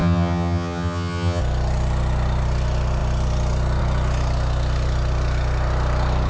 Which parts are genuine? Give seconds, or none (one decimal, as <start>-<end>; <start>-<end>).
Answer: 1.4-6.3